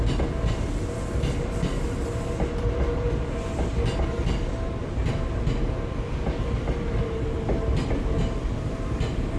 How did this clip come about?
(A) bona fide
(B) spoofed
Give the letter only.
A